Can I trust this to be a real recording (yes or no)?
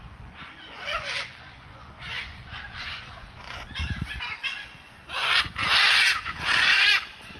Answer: no